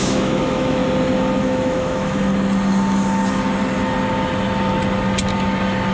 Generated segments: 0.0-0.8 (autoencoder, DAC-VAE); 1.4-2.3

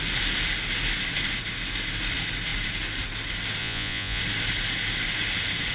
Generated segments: 3.6-4.2 (vocoder, Vocos)